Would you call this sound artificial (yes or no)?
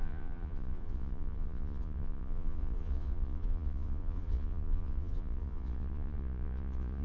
yes